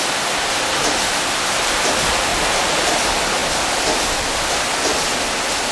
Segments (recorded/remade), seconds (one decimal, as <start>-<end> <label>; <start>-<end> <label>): 0.0-2.3 recorded; 2.3-2.9 remade; 2.9-5.7 recorded